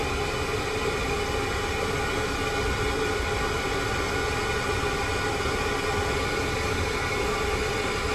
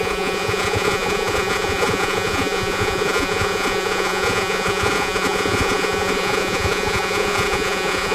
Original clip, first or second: first